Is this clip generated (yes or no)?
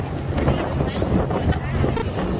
no